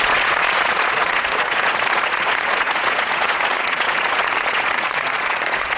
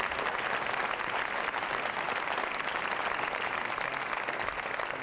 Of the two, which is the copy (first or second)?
first